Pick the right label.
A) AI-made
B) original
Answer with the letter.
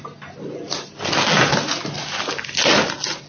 B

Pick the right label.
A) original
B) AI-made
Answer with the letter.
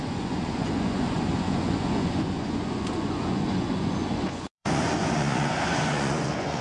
B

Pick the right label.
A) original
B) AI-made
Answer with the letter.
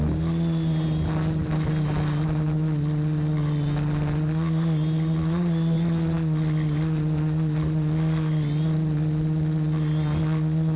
A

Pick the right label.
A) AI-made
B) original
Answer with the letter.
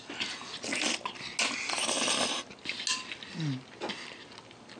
B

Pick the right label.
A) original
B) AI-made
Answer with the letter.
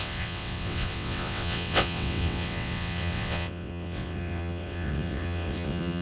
B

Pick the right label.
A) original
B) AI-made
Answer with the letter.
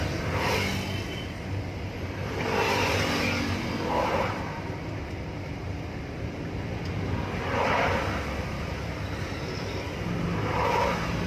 A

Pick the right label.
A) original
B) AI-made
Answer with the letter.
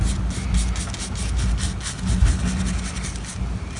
A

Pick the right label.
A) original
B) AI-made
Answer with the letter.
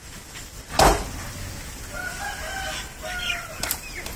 A